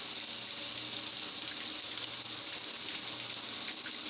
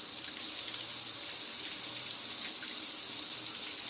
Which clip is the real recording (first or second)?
first